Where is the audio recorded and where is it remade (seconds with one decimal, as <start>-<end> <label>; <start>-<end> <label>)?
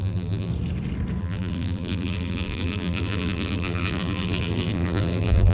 0.0-0.5 remade; 0.5-1.2 recorded; 1.2-5.5 remade